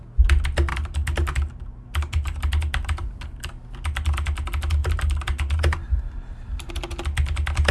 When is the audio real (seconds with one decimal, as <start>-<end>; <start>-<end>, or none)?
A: 0.0-0.7; 3.5-4.8; 6.7-7.7